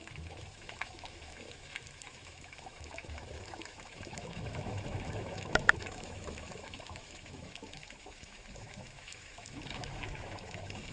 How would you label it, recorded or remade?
remade